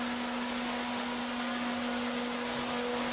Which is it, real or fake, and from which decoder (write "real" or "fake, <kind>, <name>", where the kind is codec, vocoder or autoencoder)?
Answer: real